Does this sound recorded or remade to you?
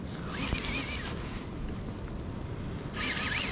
recorded